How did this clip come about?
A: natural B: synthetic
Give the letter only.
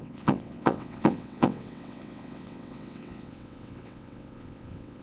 B